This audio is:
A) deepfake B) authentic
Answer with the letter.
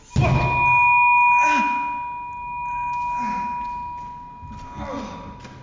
B